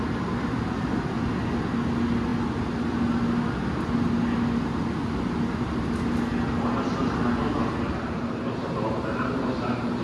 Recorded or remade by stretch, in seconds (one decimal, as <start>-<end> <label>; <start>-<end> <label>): 0.0-7.6 recorded; 7.6-10.0 remade